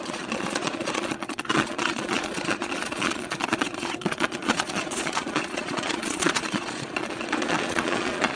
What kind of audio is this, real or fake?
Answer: fake